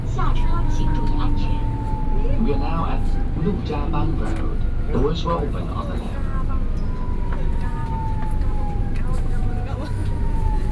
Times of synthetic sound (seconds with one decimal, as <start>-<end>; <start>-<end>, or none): 10.0-10.7